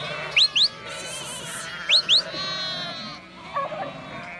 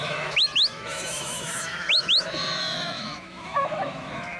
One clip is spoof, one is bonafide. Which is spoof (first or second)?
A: second